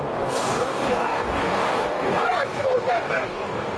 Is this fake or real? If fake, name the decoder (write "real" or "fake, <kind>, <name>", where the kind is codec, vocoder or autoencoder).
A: fake, codec, DAC